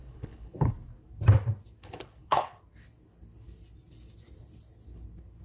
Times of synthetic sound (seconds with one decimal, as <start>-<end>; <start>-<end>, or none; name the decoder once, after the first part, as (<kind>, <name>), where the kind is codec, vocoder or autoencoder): 0.0-0.7 (codec, HILCodec); 1.8-2.6